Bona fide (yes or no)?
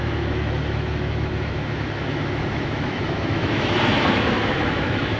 no